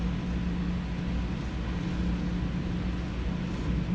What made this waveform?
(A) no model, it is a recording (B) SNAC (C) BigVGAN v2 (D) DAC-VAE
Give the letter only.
A